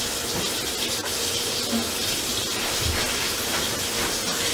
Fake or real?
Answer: real